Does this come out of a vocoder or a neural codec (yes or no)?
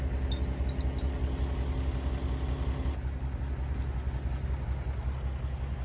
no